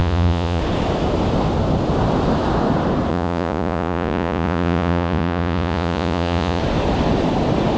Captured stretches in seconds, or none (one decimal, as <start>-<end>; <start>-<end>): 0.6-3.1; 6.6-7.8